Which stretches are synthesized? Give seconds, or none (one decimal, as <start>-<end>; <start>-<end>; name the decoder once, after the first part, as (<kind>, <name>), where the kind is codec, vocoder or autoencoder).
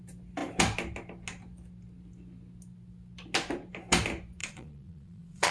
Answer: 4.4-5.5 (vocoder, Vocos)